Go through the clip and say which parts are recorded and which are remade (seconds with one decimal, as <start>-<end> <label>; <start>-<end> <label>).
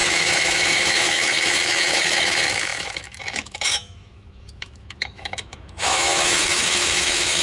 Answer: 0.0-7.4 remade